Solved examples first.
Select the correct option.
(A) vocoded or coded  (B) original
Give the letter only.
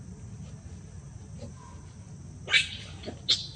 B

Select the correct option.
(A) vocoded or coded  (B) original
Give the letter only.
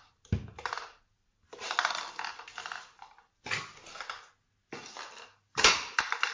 B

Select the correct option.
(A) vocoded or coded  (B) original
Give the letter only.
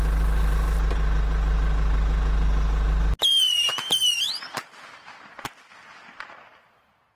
B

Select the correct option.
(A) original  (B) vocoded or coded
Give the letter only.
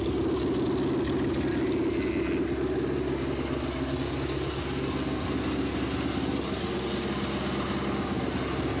A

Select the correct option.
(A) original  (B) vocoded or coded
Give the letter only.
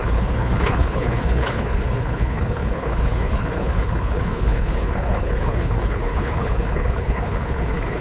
B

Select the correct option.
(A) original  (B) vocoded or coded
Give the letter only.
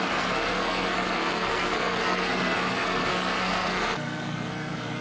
B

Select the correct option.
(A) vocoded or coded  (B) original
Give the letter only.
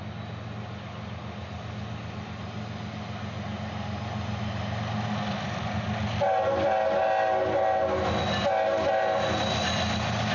B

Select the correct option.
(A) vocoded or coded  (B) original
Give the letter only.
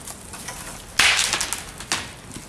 B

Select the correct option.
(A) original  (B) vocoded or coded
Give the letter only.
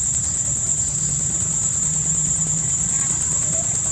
B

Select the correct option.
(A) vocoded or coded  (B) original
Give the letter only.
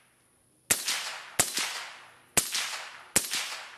B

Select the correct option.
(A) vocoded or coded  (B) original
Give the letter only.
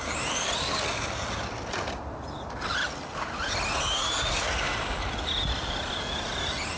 B